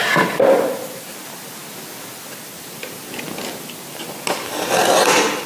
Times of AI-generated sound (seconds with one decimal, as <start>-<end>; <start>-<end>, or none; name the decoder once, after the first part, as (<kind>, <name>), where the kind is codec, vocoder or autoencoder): none